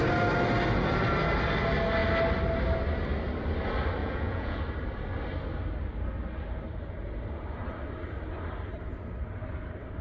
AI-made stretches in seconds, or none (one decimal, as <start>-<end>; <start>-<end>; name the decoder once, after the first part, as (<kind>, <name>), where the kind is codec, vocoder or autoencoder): 4.0-4.6 (vocoder, Vocos)